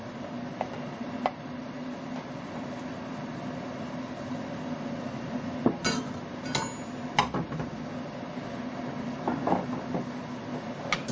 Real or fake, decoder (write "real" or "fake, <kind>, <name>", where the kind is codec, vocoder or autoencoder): real